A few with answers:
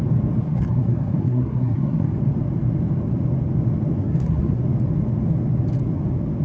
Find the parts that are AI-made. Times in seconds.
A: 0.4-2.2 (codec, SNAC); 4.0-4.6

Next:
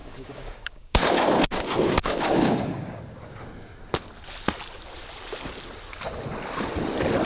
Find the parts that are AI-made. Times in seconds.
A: 0.0-3.0 (codec, DAC)

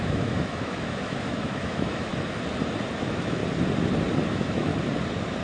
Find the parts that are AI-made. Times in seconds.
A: 0.0-2.1 (autoencoder, DAC-VAE); 2.9-3.4; 4.3-4.7

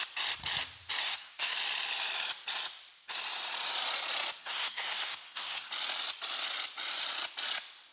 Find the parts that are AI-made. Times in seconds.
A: 1.0-1.5 (codec, SNAC); 4.4-5.7